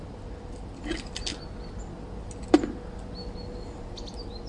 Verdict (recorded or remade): recorded